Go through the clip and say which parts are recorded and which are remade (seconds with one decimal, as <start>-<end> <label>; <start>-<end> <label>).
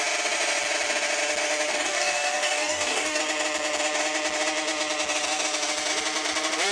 0.0-1.7 recorded; 1.7-3.2 remade; 3.2-6.7 recorded